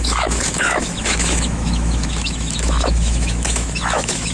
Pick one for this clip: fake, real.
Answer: fake